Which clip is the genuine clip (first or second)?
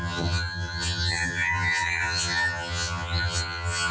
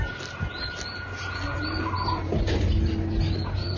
second